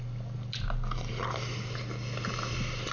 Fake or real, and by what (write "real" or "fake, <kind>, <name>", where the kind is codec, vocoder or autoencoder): real